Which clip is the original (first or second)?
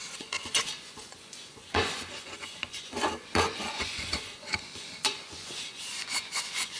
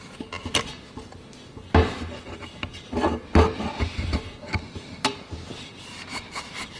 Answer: second